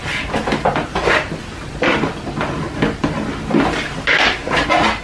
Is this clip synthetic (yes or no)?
no